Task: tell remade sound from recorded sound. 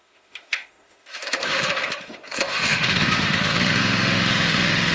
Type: remade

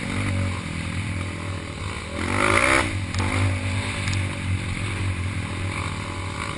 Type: recorded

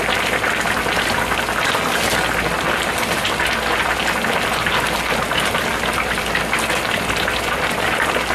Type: recorded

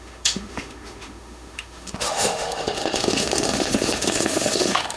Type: remade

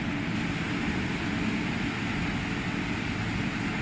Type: recorded